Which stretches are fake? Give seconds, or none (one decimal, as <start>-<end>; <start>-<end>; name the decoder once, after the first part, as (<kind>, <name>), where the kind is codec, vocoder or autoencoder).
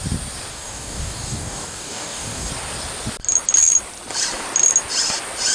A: 0.5-2.5 (codec, DAC)